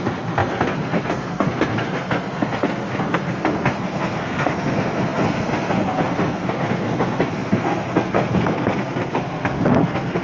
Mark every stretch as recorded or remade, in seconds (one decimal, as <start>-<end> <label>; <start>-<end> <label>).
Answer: 0.0-10.2 remade